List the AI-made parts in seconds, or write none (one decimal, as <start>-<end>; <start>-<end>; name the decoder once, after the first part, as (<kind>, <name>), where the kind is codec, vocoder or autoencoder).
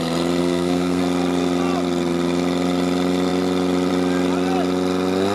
0.4-1.0 (codec, SNAC)